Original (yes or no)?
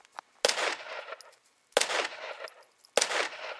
yes